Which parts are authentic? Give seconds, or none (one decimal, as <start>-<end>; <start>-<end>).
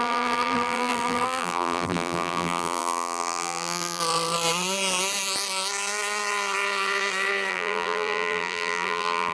4.0-7.5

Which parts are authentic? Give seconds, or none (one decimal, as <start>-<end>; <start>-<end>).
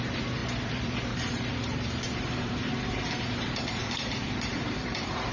none